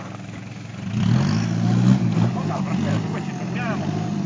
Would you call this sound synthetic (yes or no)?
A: no